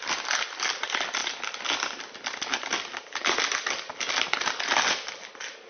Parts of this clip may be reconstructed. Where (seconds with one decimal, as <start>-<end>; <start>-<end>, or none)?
none